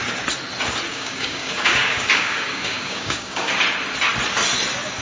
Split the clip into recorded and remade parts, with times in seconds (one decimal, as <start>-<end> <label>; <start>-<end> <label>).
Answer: 0.0-0.9 recorded; 0.9-3.5 remade; 3.5-5.0 recorded